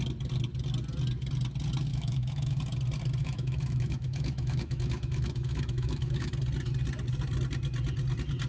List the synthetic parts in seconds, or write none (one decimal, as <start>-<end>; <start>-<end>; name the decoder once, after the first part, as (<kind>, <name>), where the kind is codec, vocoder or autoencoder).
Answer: 1.9-2.6 (autoencoder, DAC-VAE); 3.2-6.3